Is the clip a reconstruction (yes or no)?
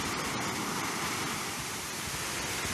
no